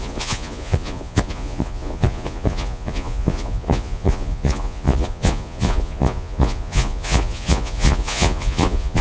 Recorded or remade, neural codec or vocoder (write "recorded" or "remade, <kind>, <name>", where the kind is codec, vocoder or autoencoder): remade, vocoder, Vocos